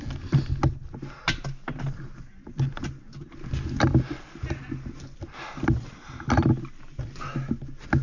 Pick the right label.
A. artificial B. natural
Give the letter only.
B